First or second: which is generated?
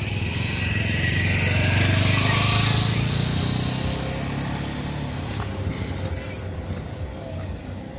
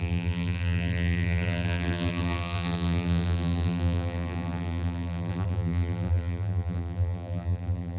second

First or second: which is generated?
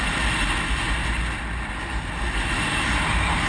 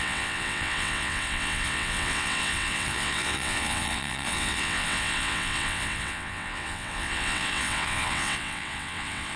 second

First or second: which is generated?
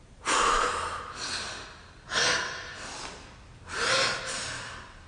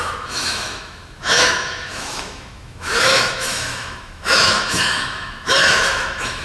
second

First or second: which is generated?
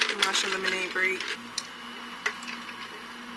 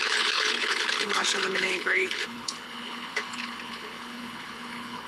second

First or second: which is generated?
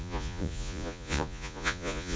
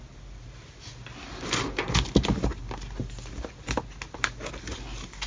first